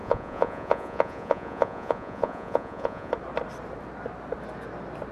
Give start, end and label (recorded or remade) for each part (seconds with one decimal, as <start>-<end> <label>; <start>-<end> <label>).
0.0-3.1 remade; 3.1-5.1 recorded